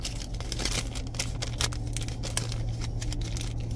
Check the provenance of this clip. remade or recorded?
recorded